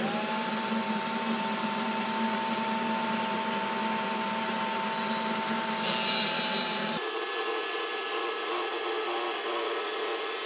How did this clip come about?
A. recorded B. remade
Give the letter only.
A